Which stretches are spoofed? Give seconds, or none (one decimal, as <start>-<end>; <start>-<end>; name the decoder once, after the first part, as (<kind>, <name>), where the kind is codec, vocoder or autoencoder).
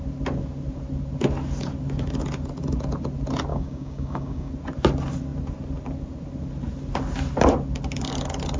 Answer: 3.5-4.5 (codec, DAC)